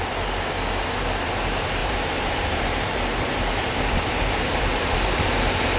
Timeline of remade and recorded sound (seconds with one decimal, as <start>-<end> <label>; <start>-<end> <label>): 0.0-1.8 recorded; 1.8-5.2 remade; 5.2-5.8 recorded

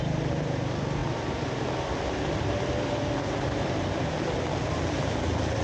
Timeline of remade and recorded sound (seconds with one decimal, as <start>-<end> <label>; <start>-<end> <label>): 0.0-5.6 recorded

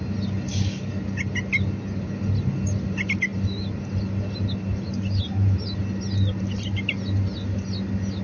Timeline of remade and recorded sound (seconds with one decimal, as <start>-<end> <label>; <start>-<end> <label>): 0.0-8.2 recorded

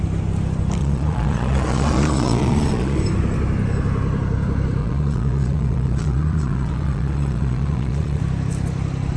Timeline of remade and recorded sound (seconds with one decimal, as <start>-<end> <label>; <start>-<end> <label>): 0.0-0.8 recorded; 0.8-3.0 remade; 3.0-4.8 recorded; 4.8-8.2 remade; 8.2-9.2 recorded

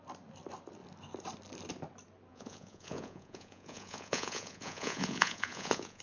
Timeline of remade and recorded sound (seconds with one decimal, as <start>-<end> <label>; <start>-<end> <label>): 0.0-2.3 recorded; 2.3-6.0 remade